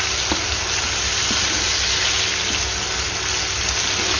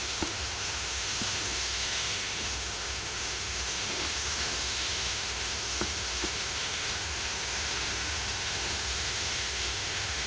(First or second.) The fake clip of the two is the second